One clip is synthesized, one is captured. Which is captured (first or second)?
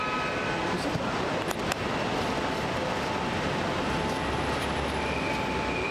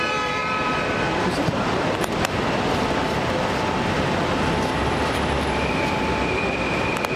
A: first